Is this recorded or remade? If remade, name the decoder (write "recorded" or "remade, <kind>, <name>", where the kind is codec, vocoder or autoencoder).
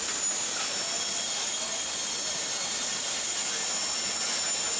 recorded